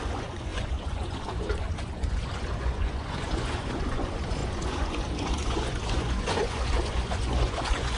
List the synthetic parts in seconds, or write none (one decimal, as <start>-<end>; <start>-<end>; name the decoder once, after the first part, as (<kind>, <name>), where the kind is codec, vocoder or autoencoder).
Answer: 0.0-8.0 (vocoder, Vocos)